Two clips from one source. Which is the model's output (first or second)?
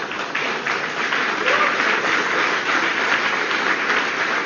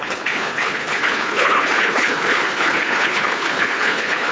second